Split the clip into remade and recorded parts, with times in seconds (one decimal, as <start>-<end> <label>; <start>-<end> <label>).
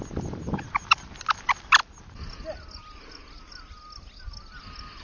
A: 0.0-5.0 recorded